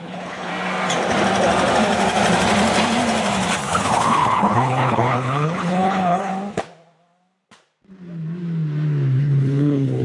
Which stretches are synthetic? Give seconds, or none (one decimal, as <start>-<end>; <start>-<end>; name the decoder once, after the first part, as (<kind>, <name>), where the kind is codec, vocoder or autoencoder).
0.0-0.5 (codec, HILCodec); 3.8-6.3; 9.2-10.0